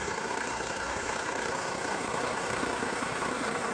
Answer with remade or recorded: remade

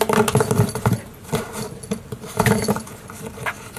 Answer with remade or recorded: recorded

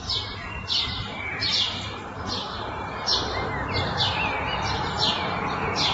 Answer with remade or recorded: remade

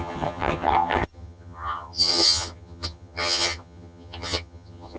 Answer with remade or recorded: remade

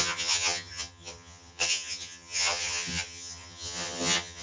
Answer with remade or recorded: remade